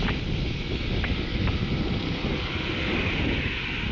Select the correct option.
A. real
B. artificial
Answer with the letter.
A